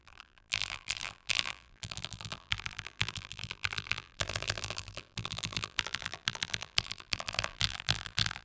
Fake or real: fake